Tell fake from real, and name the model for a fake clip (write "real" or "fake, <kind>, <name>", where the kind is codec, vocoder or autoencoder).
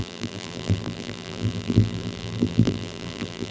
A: fake, vocoder, BigVGAN v2